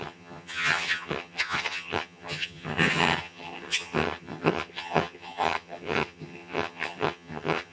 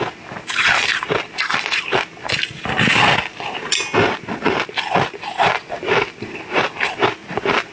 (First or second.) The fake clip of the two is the first